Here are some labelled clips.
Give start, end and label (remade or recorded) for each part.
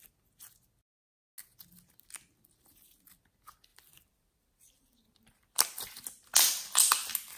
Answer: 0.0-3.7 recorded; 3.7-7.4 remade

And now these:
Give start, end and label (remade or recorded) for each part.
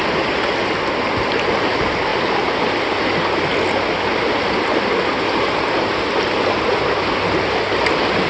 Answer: 0.0-8.3 recorded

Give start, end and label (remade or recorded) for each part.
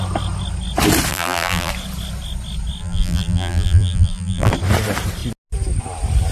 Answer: 0.0-1.1 recorded; 1.1-1.7 remade; 1.7-2.8 recorded; 2.8-4.5 remade; 4.5-6.3 recorded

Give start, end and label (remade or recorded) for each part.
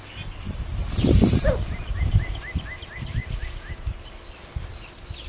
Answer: 0.0-0.8 recorded; 0.8-2.2 remade; 2.2-5.3 recorded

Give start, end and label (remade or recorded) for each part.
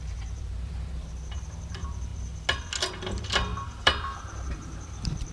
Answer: 0.0-2.1 remade; 2.1-2.9 recorded; 2.9-5.3 remade